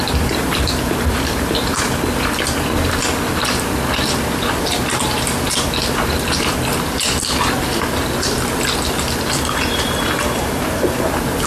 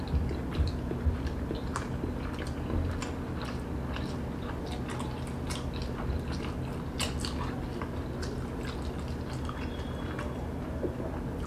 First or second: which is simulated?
first